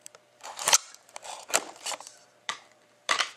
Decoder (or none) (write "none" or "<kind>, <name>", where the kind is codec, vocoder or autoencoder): vocoder, BigVGAN v2